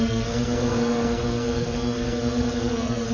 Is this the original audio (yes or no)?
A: no